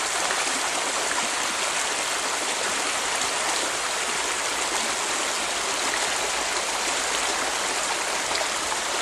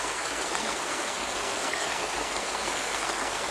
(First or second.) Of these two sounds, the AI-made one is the second